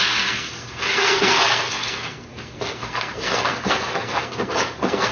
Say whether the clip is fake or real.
fake